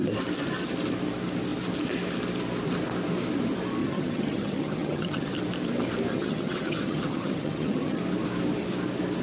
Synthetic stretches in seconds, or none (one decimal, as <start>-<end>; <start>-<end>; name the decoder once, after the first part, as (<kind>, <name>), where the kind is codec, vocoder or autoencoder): 3.8-5.3 (vocoder, HiFi-GAN); 6.1-8.0